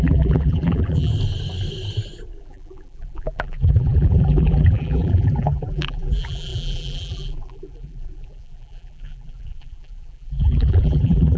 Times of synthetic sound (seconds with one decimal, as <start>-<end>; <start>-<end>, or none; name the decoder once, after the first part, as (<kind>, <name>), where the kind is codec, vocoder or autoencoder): 0.0-1.1 (vocoder, BigVGAN v2); 2.4-11.4